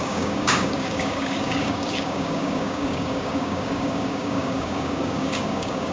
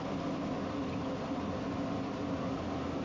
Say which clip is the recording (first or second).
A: second